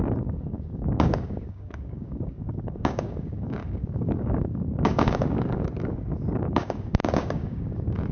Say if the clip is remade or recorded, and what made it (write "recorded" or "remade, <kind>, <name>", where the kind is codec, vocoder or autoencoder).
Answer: remade, codec, DAC